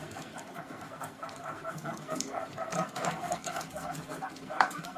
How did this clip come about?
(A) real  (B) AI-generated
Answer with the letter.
B